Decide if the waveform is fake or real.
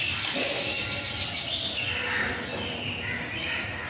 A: real